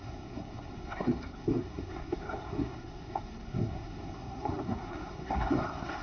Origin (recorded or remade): remade